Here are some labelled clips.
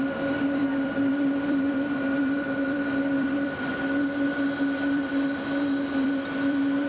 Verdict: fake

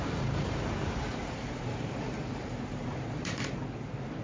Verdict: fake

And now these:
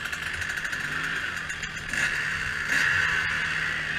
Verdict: real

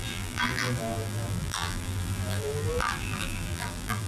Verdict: fake